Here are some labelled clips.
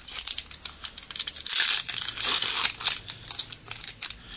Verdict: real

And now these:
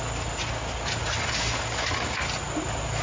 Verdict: real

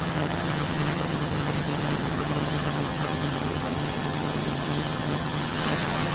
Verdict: fake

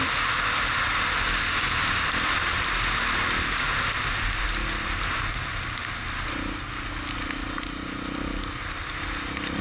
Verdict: real